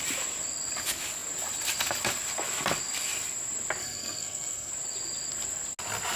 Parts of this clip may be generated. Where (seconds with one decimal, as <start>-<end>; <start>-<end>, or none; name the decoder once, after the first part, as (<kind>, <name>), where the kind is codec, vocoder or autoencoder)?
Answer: 3.8-4.7 (codec, SNAC)